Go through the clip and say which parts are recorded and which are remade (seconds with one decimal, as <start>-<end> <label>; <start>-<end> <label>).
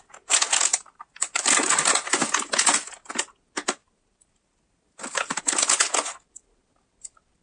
0.0-0.7 recorded; 0.7-1.8 remade; 1.8-3.8 recorded; 3.8-5.4 remade; 5.4-7.4 recorded